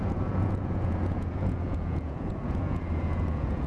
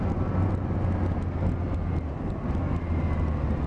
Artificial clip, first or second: first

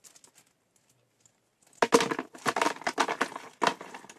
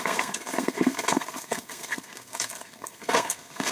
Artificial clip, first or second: second